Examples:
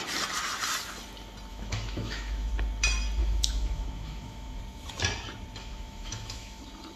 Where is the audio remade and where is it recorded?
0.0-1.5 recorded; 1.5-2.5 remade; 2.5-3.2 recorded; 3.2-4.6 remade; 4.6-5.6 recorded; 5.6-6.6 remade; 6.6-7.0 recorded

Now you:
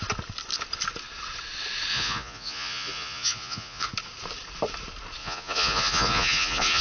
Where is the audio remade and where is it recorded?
0.0-1.9 recorded; 1.9-3.9 remade; 3.9-5.2 recorded; 5.2-6.8 remade

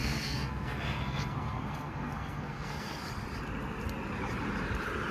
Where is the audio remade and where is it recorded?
0.0-3.1 remade; 3.1-5.1 recorded